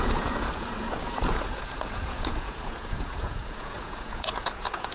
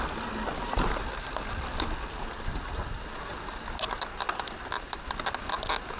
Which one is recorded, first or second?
second